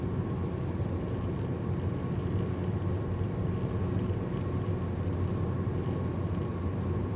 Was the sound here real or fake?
real